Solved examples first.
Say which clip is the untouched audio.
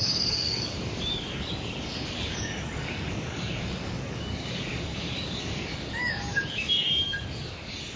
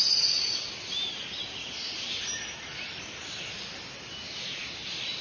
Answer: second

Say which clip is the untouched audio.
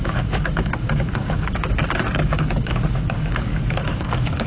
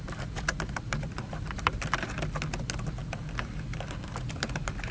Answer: second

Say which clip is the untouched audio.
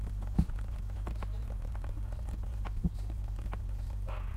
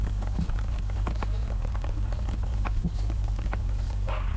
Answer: first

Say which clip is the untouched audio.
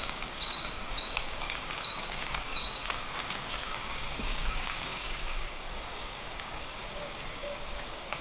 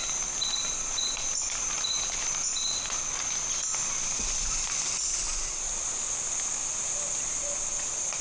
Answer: second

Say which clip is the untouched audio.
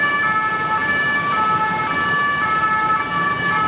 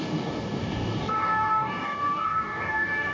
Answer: first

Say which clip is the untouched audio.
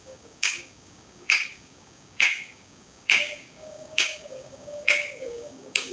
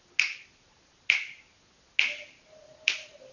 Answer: second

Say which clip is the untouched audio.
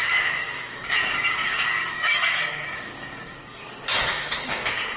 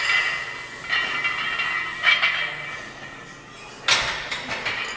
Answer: second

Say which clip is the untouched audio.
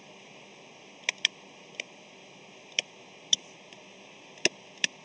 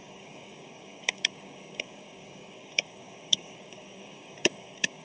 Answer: first